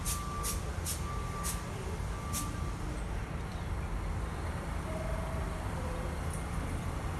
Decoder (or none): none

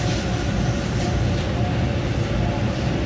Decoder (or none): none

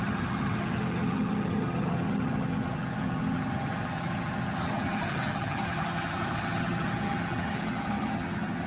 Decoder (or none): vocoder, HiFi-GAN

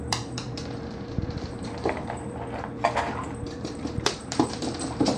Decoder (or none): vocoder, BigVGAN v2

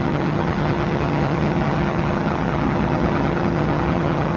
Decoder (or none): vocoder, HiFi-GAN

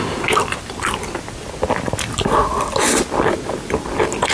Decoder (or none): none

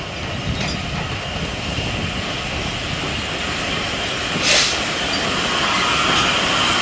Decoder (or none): none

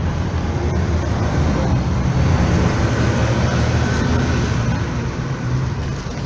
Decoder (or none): none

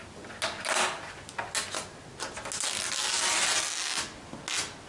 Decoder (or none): none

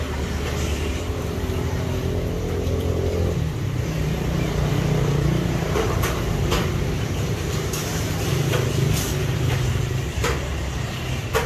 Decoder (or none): vocoder, BigVGAN v2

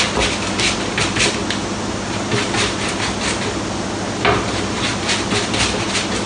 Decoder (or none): none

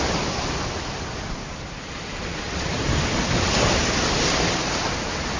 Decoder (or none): none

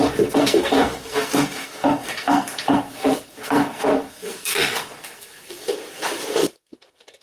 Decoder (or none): codec, SNAC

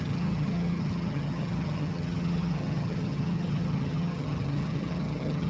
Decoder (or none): vocoder, HiFi-GAN